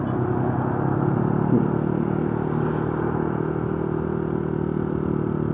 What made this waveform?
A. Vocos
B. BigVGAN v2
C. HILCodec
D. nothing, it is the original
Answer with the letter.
D